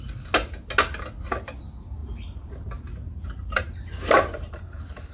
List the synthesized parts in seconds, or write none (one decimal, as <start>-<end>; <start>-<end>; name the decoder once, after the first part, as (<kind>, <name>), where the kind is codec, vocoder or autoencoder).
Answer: 2.0-5.1 (vocoder, BigVGAN v2)